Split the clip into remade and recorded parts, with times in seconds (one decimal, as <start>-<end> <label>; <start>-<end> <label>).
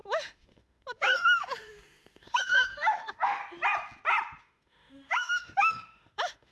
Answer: 0.0-3.4 remade; 3.4-4.4 recorded; 4.4-6.5 remade